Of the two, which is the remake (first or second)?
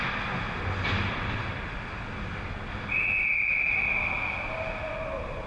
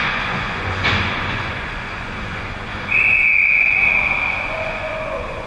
second